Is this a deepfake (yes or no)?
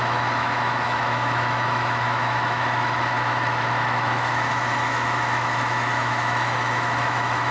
yes